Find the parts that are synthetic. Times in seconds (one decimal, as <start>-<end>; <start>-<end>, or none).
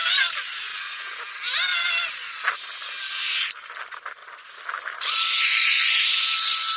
none